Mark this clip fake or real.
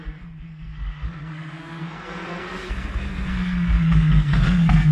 fake